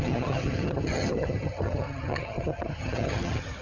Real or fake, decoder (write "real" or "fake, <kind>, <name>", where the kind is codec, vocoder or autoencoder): fake, vocoder, HiFi-GAN